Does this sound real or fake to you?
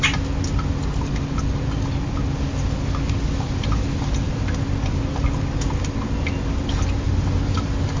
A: real